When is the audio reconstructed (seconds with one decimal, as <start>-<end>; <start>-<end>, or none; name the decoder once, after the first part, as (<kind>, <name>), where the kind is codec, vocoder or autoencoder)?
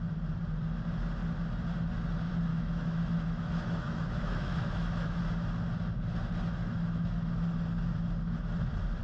2.5-5.2 (autoencoder, DAC-VAE); 6.6-7.3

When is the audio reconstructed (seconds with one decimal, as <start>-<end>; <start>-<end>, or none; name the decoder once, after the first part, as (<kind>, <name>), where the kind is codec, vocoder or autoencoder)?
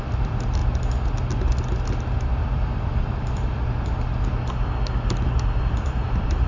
0.0-0.6 (vocoder, BigVGAN v2); 2.3-4.1; 5.7-6.5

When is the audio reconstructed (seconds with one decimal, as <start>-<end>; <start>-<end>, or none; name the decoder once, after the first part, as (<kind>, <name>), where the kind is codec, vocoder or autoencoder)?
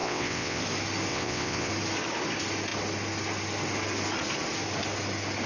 0.0-0.6 (vocoder, WaveNeXt); 1.1-1.7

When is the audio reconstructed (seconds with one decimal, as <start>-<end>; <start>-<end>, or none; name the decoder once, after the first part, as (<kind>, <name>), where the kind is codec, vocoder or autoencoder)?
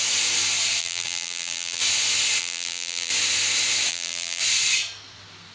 0.8-1.8 (vocoder, BigVGAN v2); 2.4-3.1; 3.9-4.4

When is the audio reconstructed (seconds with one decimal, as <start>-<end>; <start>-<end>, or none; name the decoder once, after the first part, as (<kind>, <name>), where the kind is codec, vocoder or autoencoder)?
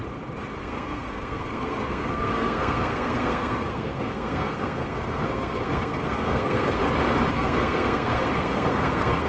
0.6-6.8 (codec, SNAC); 7.3-9.3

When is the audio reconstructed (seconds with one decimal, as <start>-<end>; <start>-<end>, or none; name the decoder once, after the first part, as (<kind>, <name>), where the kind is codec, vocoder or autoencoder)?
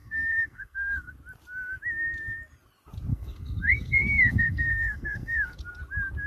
0.0-1.1 (codec, SNAC); 3.1-5.6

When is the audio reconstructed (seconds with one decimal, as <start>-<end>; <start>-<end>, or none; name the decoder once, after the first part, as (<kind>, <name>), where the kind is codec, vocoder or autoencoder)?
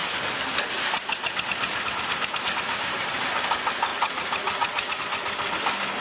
3.9-5.0 (vocoder, Vocos)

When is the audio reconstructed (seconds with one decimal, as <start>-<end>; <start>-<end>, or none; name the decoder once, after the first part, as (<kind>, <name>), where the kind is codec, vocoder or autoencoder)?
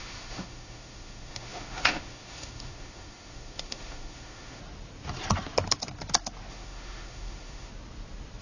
0.0-4.6 (autoencoder, DAC-VAE); 6.5-7.7